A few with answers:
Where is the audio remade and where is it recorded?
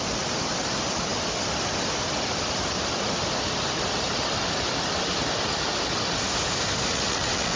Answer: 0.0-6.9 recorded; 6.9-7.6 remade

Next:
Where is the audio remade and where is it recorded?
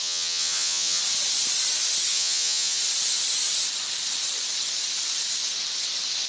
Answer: 0.0-1.0 remade; 1.0-2.1 recorded; 2.1-2.8 remade; 2.8-6.3 recorded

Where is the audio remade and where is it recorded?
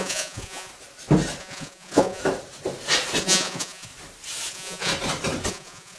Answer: 0.0-0.7 remade; 0.7-1.4 recorded; 1.4-2.2 remade; 2.2-3.2 recorded; 3.2-3.9 remade; 3.9-4.5 recorded; 4.5-4.9 remade; 4.9-5.5 recorded; 5.5-6.0 remade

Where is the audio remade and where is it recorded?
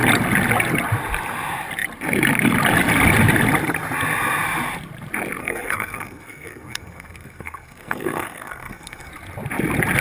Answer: 0.0-5.4 recorded; 5.4-9.1 remade; 9.1-10.0 recorded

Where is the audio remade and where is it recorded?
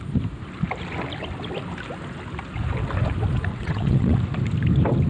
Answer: 0.0-3.5 recorded; 3.5-4.2 remade; 4.2-5.1 recorded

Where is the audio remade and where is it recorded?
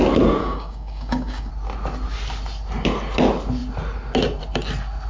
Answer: 0.0-0.4 recorded; 0.4-1.5 remade; 1.5-5.1 recorded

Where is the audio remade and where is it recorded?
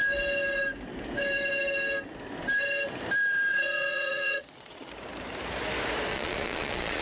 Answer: 0.0-3.5 recorded; 3.5-4.9 remade; 4.9-6.1 recorded; 6.1-7.0 remade